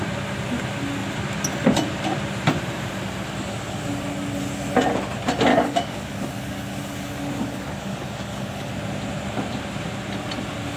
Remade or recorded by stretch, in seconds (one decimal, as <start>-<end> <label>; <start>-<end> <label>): 0.0-5.5 recorded; 5.5-8.7 remade; 8.7-10.8 recorded

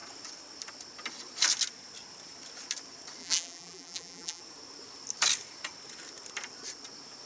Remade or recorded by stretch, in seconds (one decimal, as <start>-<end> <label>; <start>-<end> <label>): 0.0-3.2 recorded; 3.2-4.4 remade; 4.4-7.3 recorded

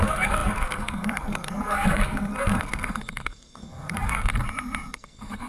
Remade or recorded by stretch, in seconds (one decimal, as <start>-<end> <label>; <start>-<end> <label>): 0.0-4.3 remade; 4.3-4.9 recorded; 4.9-5.5 remade

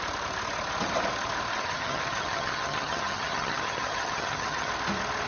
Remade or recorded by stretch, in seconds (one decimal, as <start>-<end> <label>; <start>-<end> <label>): 0.0-1.5 recorded; 1.5-4.7 remade; 4.7-5.3 recorded